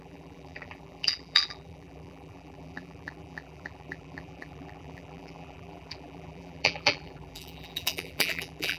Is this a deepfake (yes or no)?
yes